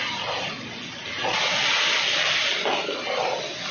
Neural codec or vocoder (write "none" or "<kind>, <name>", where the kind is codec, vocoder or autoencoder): none